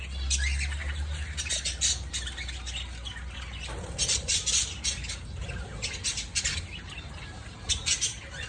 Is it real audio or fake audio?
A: real